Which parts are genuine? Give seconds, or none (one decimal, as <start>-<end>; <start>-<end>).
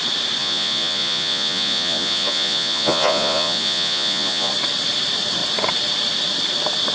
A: 0.0-0.4; 4.5-6.9